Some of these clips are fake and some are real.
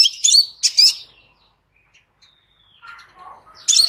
real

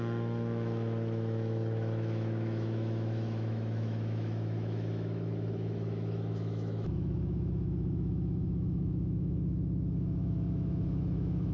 fake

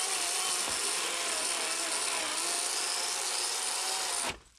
real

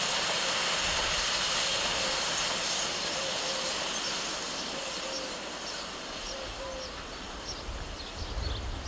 real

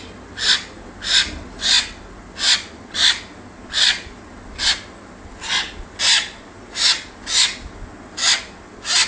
real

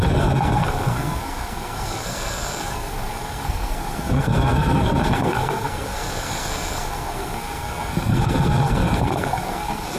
fake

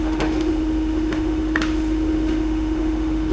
fake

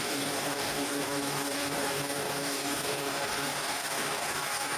fake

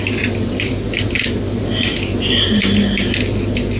real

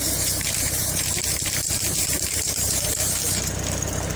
fake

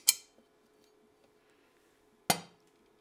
real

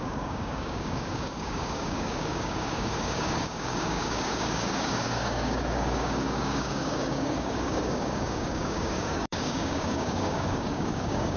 fake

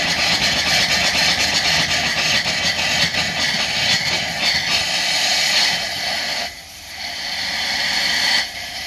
real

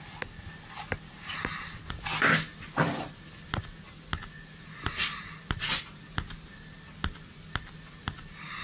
real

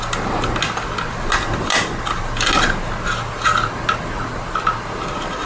real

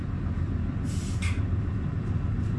real